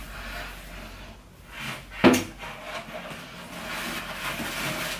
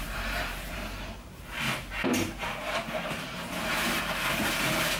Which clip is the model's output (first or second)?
second